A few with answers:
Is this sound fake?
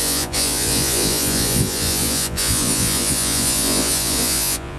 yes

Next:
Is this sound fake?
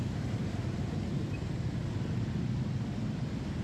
no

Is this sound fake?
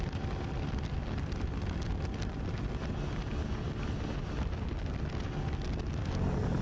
no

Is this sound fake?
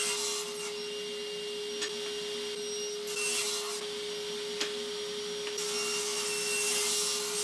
no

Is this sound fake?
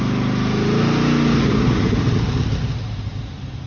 no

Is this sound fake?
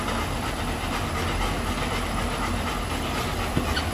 no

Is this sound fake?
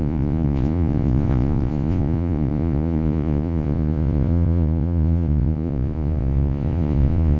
yes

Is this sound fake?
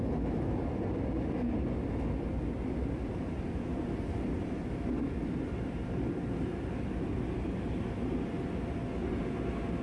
no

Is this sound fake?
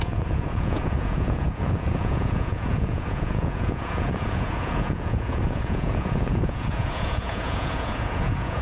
yes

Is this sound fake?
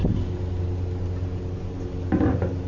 no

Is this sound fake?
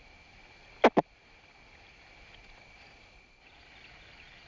no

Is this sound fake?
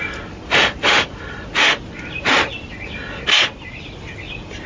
no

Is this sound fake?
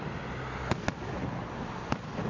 no